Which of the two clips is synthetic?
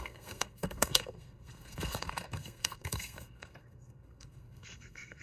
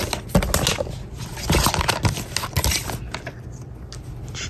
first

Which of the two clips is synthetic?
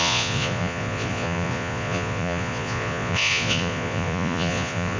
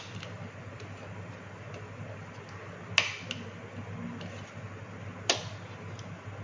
first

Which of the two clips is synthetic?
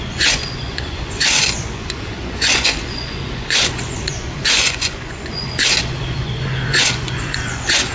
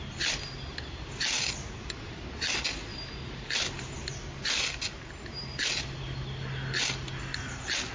first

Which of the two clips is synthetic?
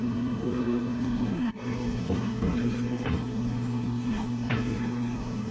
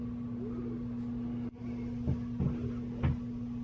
first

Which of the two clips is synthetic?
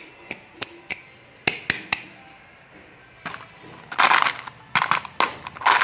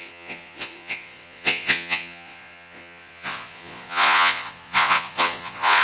second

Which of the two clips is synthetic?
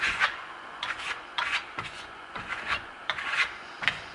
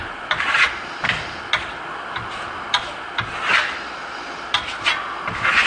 first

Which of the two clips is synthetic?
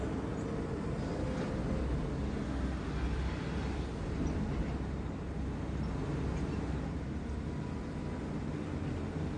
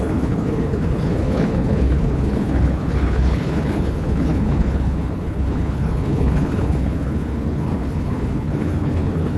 second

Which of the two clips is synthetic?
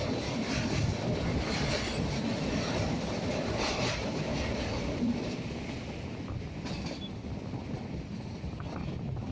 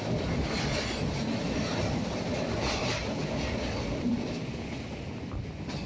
first